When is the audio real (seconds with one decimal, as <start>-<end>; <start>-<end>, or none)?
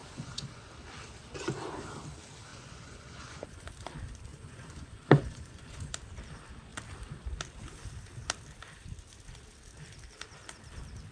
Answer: 0.7-2.5; 3.7-4.3; 5.9-11.1